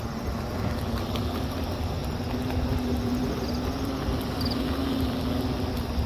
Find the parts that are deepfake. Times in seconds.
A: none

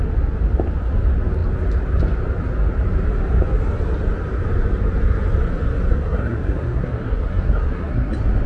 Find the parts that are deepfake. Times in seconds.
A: 5.9-8.1 (codec, SNAC)

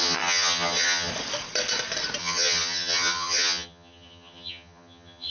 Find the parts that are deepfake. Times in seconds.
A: 0.0-1.1 (vocoder, HiFi-GAN); 2.2-5.3

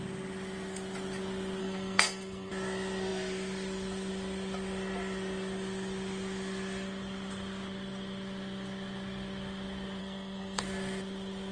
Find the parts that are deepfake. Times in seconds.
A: 1.6-2.5 (codec, SNAC); 10.0-10.6

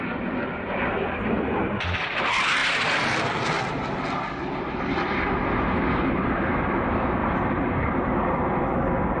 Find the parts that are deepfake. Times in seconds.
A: 7.2-8.1 (vocoder, BigVGAN v2)